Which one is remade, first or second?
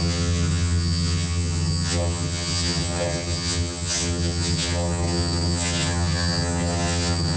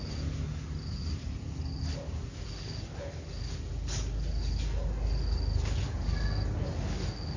first